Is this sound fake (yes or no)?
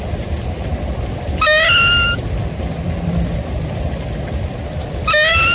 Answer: no